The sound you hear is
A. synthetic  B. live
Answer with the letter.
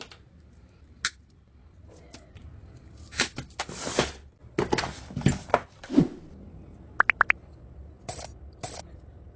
B